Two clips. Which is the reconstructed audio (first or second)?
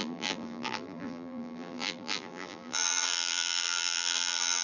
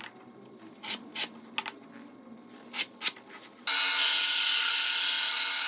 first